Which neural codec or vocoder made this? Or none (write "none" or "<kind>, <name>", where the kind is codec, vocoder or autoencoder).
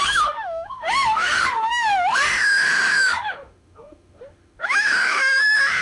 autoencoder, DAC-VAE